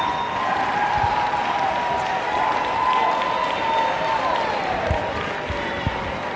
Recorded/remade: recorded